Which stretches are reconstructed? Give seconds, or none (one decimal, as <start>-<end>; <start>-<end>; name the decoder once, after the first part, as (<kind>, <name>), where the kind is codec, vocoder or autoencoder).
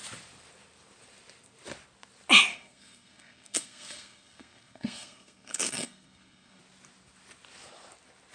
2.5-6.6 (codec, SNAC)